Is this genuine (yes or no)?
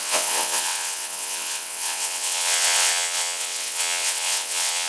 no